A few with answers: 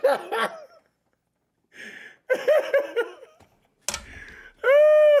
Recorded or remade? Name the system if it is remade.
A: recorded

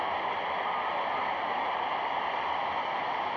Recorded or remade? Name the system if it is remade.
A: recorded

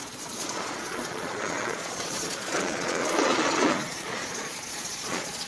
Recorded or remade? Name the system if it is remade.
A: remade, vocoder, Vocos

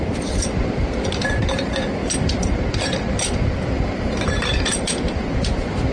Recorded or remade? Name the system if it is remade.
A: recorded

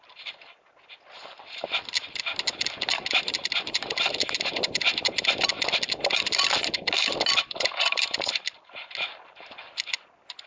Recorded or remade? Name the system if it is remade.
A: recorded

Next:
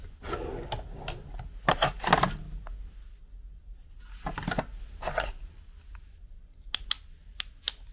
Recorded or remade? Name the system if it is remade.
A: recorded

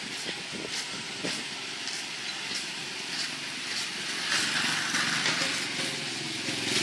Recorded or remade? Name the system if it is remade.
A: recorded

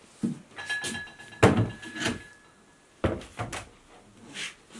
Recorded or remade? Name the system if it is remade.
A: recorded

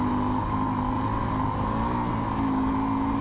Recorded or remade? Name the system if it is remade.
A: recorded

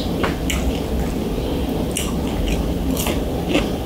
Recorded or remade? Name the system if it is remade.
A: recorded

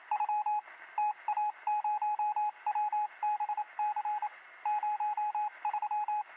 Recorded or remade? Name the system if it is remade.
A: recorded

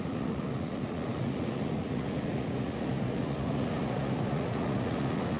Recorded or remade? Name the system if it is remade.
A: remade, vocoder, Vocos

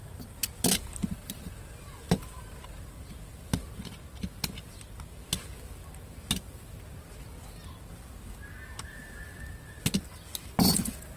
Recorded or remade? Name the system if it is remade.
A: recorded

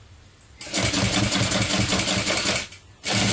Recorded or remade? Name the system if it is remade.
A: recorded